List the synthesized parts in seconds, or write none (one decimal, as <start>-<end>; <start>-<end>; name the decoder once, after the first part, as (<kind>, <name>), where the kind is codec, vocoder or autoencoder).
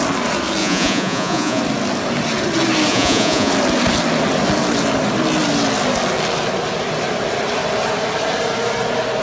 0.6-1.6 (vocoder, Vocos); 2.9-3.5